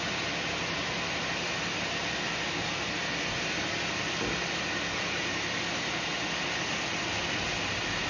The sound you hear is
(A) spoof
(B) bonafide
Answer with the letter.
B